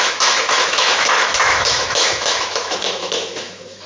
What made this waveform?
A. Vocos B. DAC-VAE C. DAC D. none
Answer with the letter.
B